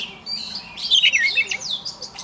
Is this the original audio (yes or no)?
yes